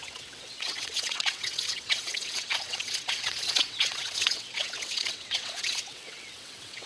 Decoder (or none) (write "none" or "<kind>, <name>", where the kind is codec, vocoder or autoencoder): vocoder, WaveNeXt